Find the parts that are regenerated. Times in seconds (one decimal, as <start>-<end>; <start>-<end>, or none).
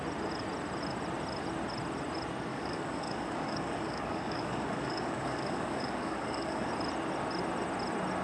2.5-6.7